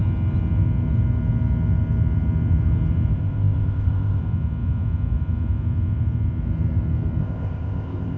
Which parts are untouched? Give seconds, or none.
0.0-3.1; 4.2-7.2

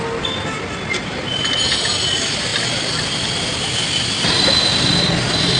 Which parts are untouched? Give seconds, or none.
0.0-5.6

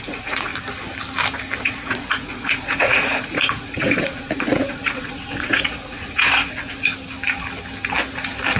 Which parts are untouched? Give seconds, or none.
0.5-1.6; 6.9-8.6

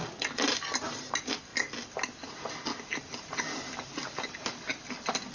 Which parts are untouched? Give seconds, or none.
0.0-5.3